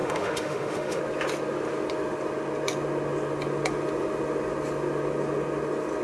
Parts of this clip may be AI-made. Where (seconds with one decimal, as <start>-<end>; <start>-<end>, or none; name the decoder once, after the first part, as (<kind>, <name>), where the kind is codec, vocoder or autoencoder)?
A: 0.0-1.0 (autoencoder, DAC-VAE)